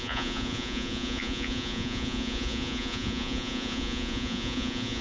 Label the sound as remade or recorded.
remade